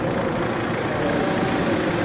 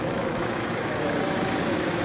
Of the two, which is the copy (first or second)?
second